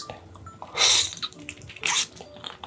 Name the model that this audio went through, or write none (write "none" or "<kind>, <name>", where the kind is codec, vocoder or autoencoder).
none